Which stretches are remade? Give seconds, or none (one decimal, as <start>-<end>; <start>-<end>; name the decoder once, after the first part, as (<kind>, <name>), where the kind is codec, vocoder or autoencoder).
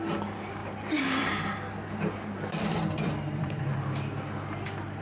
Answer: 0.6-3.6 (vocoder, BigVGAN v2)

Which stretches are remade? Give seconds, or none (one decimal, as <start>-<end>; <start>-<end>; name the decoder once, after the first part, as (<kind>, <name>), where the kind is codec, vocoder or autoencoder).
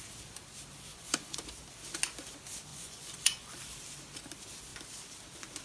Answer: 0.9-1.4 (vocoder, Vocos); 2.7-3.6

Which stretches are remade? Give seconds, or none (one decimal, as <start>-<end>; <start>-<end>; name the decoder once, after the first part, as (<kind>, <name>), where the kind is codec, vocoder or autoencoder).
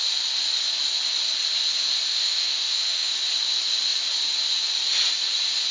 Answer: 2.1-3.1 (autoencoder, DAC-VAE)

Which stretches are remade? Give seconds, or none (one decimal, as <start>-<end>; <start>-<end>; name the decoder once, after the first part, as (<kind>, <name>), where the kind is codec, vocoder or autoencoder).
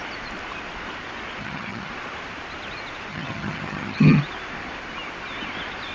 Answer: 1.4-1.9 (vocoder, HiFi-GAN); 3.1-4.2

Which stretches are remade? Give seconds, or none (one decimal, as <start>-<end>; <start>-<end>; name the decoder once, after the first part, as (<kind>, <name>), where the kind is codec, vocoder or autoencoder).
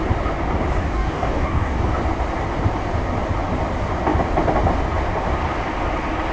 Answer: 0.8-1.9 (codec, DAC)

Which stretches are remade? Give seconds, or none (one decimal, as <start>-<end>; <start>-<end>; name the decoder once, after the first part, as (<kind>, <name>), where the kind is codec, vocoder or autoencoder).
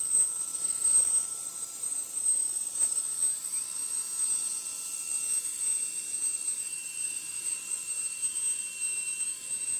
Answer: 0.5-3.0 (vocoder, BigVGAN v2); 7.0-7.8